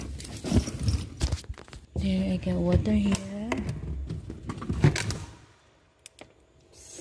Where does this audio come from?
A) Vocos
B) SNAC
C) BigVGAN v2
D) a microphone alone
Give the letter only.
D